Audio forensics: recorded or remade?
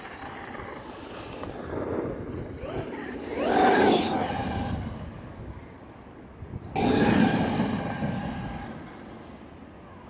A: recorded